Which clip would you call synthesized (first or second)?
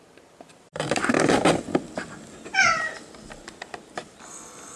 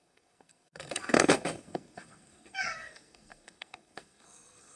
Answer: second